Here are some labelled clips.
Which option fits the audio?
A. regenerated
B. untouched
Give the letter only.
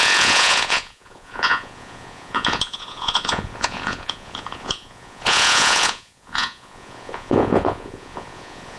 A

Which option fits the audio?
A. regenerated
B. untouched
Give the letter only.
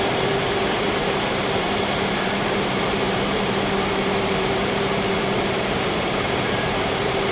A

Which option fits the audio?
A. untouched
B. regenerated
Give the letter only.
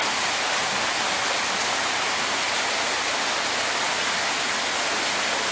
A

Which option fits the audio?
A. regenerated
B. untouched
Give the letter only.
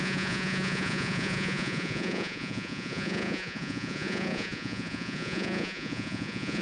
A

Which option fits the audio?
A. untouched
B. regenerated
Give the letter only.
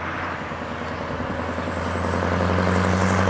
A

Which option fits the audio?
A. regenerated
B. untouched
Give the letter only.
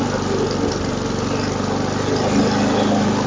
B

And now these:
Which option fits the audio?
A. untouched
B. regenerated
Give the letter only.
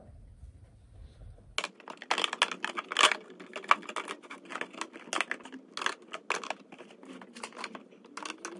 A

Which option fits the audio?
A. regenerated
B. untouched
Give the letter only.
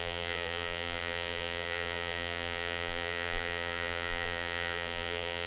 A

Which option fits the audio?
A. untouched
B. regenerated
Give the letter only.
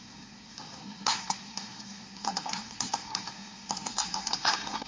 B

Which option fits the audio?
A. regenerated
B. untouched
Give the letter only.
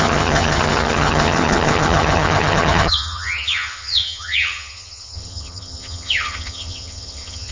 A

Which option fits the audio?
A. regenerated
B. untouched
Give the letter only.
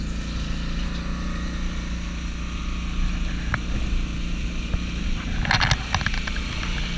B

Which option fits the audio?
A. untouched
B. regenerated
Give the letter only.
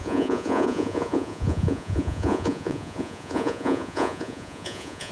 B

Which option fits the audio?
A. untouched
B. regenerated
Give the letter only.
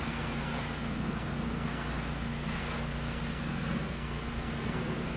B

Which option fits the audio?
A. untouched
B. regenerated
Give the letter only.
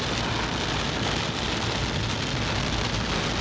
A